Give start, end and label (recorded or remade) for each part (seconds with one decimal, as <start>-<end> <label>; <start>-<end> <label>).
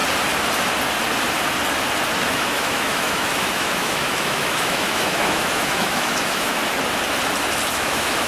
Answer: 0.0-2.3 recorded; 2.3-6.6 remade; 6.6-7.7 recorded; 7.7-8.3 remade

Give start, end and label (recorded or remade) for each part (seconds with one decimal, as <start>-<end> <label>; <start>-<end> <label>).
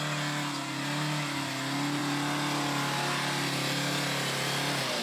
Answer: 0.0-5.0 recorded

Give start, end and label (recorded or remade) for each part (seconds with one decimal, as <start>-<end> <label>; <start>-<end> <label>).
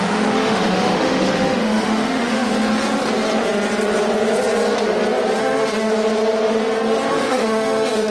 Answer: 0.0-2.5 remade; 2.5-5.4 recorded; 5.4-5.9 remade; 5.9-7.1 recorded; 7.1-8.1 remade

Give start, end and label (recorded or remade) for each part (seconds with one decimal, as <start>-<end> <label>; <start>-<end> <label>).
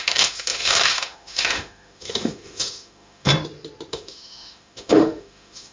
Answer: 0.0-3.3 remade; 3.3-3.9 recorded; 3.9-5.7 remade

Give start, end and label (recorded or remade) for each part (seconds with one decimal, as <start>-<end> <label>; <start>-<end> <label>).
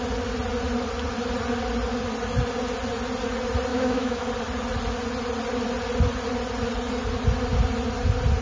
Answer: 0.0-3.7 recorded; 3.7-4.3 remade; 4.3-8.4 recorded